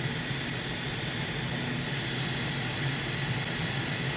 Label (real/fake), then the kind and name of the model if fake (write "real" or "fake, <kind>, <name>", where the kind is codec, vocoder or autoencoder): real